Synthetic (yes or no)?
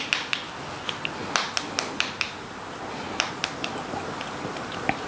no